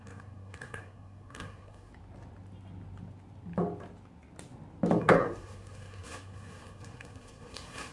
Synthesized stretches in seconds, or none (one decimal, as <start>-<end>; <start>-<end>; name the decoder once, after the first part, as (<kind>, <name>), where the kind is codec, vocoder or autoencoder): 0.0-1.9 (codec, SNAC); 5.0-7.9